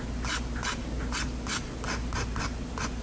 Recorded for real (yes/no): yes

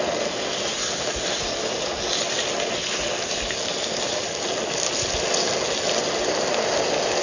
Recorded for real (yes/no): yes